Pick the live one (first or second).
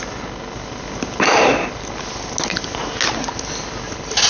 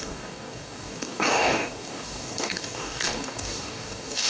first